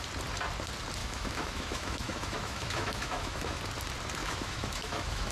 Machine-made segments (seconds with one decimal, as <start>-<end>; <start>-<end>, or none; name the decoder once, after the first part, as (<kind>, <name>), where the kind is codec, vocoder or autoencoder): 1.0-3.6 (autoencoder, DAC-VAE); 4.2-5.3